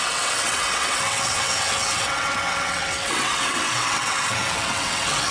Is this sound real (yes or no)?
no